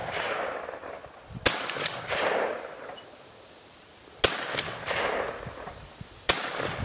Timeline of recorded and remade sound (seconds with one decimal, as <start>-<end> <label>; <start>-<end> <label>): 0.0-6.8 recorded